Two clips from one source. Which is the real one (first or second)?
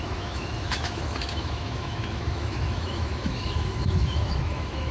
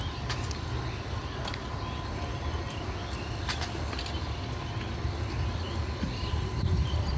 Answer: second